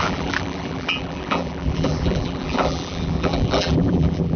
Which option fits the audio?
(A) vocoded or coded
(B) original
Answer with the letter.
A